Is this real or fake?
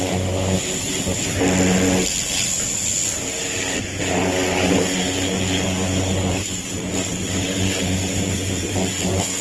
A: real